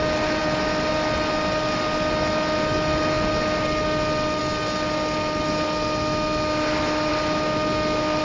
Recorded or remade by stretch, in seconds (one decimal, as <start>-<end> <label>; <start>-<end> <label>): 0.0-8.2 recorded